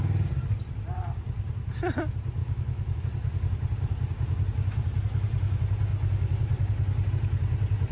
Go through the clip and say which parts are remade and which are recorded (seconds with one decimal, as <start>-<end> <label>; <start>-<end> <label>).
0.0-2.4 recorded; 2.4-3.0 remade; 3.0-7.9 recorded